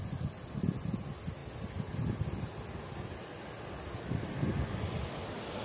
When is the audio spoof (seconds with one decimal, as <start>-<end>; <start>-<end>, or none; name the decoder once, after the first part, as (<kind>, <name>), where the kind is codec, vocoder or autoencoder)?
none